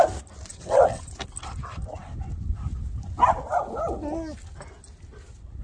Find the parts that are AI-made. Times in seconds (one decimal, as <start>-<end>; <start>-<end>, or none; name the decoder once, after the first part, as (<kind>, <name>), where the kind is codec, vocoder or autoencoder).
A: 0.5-1.1 (vocoder, WaveNeXt)